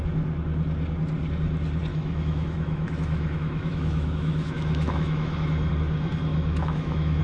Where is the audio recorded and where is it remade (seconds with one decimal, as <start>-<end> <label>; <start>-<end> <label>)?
0.0-1.9 recorded; 1.9-5.7 remade; 5.7-6.3 recorded; 6.3-7.2 remade